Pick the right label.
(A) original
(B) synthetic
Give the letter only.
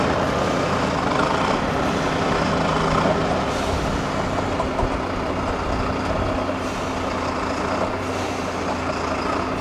A